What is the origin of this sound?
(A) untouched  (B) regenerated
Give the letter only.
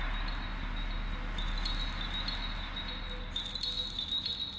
A